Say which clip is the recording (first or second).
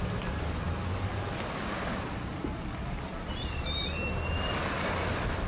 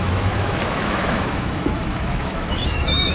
first